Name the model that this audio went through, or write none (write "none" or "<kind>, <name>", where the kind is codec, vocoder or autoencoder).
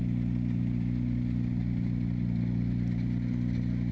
none